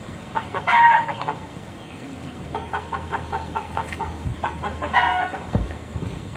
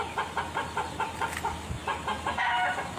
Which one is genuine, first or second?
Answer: second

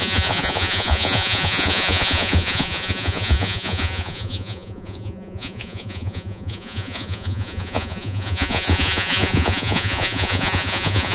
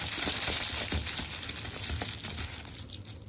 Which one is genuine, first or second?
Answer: second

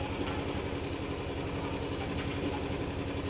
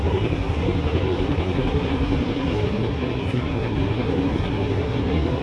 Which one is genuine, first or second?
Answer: first